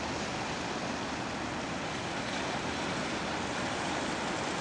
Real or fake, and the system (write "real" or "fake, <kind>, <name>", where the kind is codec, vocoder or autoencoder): real